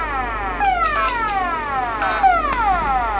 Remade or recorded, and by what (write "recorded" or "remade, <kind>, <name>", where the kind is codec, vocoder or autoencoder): recorded